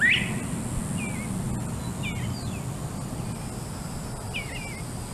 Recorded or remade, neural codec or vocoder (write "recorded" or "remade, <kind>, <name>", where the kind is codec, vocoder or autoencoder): recorded